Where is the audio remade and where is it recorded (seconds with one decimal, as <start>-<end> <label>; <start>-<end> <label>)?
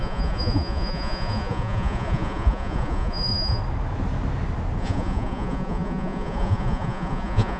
0.0-3.6 remade; 3.6-4.8 recorded; 4.8-7.6 remade